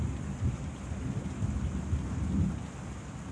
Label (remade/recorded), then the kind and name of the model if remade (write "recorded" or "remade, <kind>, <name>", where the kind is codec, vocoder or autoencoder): recorded